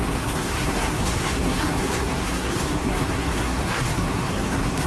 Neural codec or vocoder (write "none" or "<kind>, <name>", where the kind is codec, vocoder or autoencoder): codec, SNAC